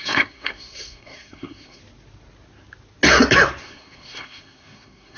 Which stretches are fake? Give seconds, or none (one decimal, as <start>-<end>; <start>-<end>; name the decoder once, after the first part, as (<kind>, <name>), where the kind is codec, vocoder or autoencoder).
0.0-1.8 (codec, SNAC); 3.6-5.2